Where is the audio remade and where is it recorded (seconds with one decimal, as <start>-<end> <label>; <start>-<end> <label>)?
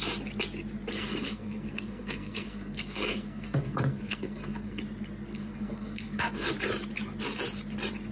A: 0.0-0.9 recorded; 0.9-4.8 remade; 4.8-5.3 recorded; 5.3-6.5 remade; 6.5-8.1 recorded